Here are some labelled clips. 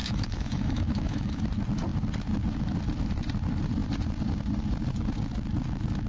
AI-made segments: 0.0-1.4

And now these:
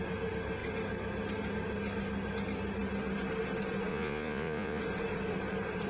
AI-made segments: 3.9-4.8

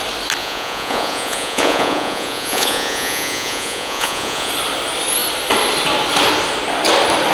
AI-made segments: 0.4-4.5

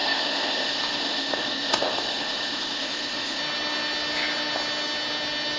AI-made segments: 0.0-3.4

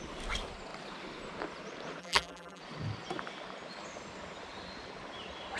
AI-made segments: 2.0-2.6

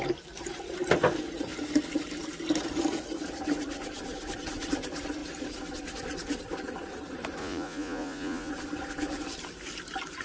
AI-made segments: 7.4-8.5